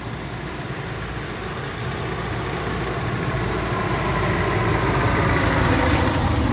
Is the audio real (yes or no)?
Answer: yes